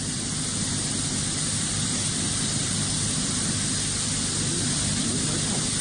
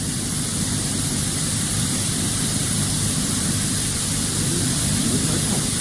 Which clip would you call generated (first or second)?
second